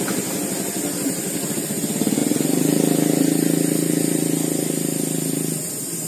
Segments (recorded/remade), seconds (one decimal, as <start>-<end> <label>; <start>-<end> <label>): 0.0-6.1 recorded